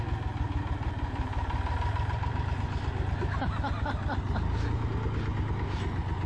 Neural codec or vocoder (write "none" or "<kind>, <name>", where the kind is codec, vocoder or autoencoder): none